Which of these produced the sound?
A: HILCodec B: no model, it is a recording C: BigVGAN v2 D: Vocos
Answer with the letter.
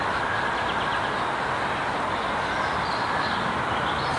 B